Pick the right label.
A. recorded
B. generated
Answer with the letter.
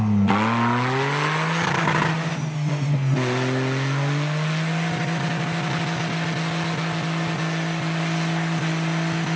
A